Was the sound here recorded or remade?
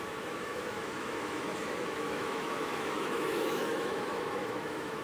remade